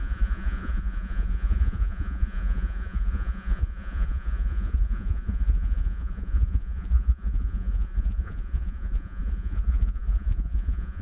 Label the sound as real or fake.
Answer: fake